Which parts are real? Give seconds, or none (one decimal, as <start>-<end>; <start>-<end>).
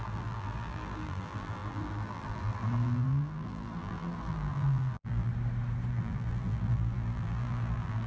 5.3-5.9